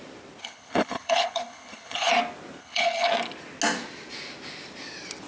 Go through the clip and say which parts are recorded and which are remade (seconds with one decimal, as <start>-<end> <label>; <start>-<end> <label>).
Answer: 0.0-0.4 recorded; 0.4-2.1 remade; 2.1-2.6 recorded; 2.6-3.1 remade; 3.1-5.3 recorded